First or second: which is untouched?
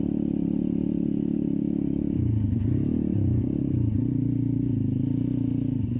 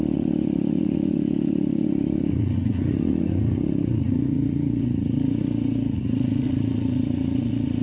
first